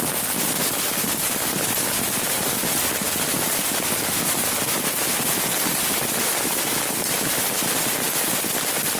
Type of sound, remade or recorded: recorded